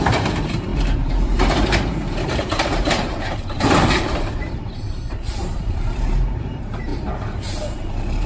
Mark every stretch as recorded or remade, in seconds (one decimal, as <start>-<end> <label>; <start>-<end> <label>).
0.0-8.3 remade